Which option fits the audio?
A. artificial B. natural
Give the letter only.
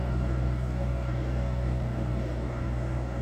A